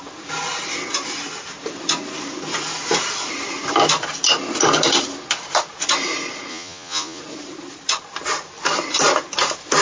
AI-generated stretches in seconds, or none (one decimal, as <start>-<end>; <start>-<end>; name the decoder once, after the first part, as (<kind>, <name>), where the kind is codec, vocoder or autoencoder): 6.5-7.2 (vocoder, Vocos)